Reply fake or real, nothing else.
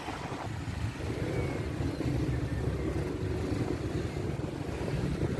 real